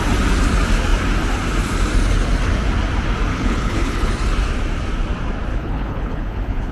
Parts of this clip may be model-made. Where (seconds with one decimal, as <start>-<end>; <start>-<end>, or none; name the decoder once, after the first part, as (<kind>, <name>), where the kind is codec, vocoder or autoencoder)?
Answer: 3.3-4.1 (codec, HILCodec); 5.5-6.7

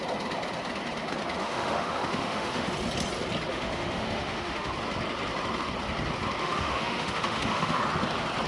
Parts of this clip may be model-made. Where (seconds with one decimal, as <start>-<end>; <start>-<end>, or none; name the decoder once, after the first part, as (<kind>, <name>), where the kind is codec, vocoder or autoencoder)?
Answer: 1.4-2.7 (autoencoder, DAC-VAE); 3.5-4.7; 6.4-7.8

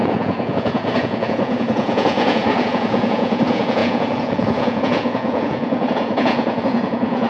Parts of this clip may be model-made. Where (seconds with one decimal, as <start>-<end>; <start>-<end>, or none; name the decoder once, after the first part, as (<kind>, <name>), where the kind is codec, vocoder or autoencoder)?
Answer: 0.0-7.3 (vocoder, Vocos)

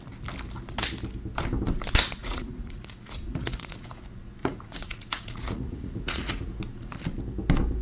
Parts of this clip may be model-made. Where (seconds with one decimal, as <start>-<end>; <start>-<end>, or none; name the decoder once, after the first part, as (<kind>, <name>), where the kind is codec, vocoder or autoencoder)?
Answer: 2.2-4.0 (vocoder, Vocos); 4.4-6.5

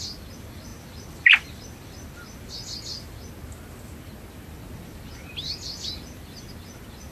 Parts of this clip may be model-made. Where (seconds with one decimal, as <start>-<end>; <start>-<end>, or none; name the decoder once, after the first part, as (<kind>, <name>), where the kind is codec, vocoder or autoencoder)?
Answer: none